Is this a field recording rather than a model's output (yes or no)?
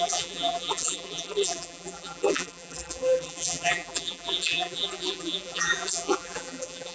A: no